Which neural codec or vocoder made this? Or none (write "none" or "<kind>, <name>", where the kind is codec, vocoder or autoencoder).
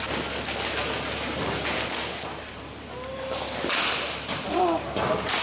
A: none